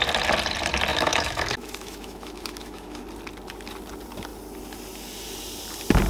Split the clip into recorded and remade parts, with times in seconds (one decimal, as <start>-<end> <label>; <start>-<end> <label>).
0.0-0.9 recorded; 0.9-3.0 remade; 3.0-6.1 recorded

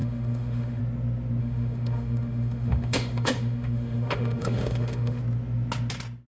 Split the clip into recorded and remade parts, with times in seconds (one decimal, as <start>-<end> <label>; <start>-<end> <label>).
0.0-0.8 remade; 0.8-1.4 recorded; 1.4-5.2 remade; 5.2-6.3 recorded

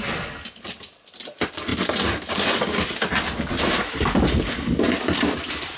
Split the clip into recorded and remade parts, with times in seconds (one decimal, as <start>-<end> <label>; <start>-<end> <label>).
0.0-1.7 remade; 1.7-4.9 recorded; 4.9-5.8 remade

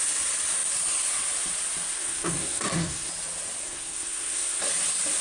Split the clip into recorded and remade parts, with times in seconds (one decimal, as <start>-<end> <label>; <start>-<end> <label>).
0.0-1.9 recorded; 1.9-3.1 remade; 3.1-3.6 recorded; 3.6-4.6 remade; 4.6-5.2 recorded

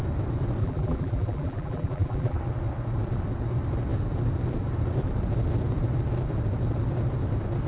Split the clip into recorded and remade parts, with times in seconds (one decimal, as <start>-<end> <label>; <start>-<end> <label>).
0.0-0.6 recorded; 0.6-2.4 remade; 2.4-7.7 recorded